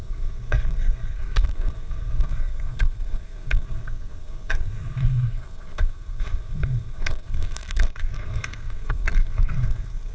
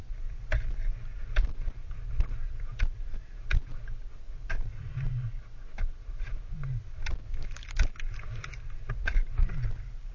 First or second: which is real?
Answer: second